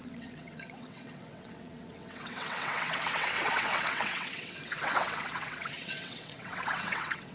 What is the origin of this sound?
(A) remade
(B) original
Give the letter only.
A